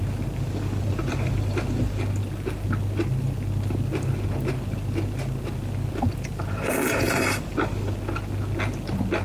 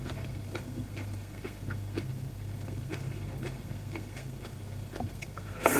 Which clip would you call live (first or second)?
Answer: first